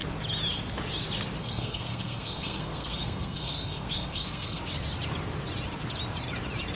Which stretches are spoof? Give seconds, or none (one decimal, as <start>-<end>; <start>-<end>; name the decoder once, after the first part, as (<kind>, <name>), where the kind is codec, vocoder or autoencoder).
1.4-4.6 (codec, SNAC)